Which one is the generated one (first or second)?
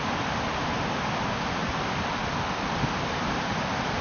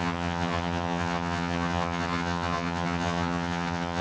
second